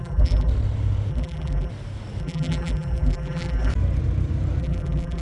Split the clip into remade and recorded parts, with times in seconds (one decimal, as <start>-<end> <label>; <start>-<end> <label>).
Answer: 0.0-0.5 remade; 0.5-1.1 recorded; 1.1-1.7 remade; 1.7-2.2 recorded; 2.2-3.7 remade; 3.7-4.6 recorded; 4.6-5.2 remade